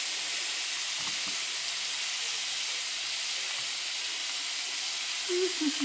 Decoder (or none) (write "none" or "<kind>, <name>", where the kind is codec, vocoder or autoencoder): none